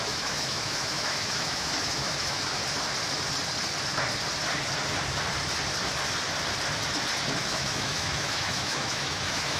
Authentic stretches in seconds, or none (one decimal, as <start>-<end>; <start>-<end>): 2.6-7.4